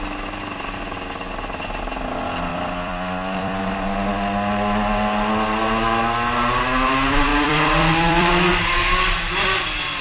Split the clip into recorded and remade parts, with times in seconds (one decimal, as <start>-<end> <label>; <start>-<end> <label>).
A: 0.0-2.5 recorded; 2.5-3.6 remade; 3.6-7.3 recorded; 7.3-8.5 remade; 8.5-10.0 recorded